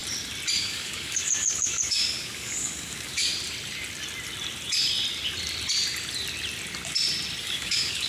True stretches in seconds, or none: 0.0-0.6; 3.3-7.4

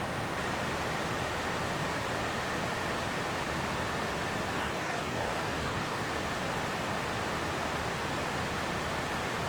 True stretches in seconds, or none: 0.0-4.6; 6.1-9.5